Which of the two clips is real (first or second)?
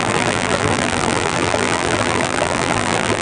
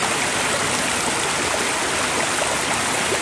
second